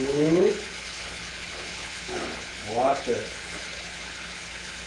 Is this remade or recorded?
remade